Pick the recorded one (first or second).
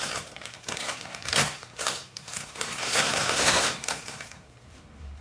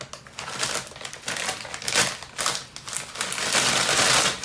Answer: second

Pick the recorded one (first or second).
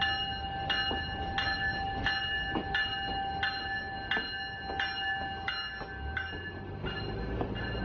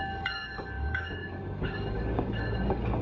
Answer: first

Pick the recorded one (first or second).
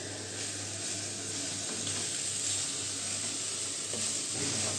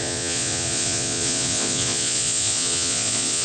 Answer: first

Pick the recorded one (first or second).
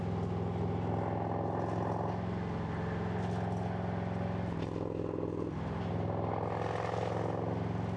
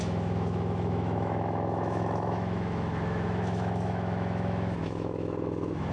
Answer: first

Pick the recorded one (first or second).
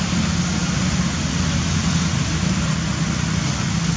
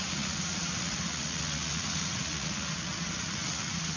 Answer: first